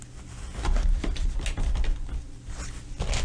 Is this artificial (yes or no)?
no